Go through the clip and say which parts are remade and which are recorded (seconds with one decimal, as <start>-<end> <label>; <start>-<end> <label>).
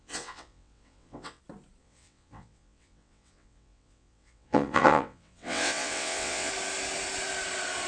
0.0-1.4 remade; 1.4-1.8 recorded; 1.8-6.5 remade; 6.5-7.9 recorded